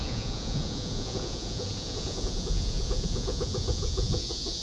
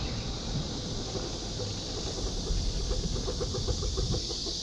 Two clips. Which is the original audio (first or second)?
second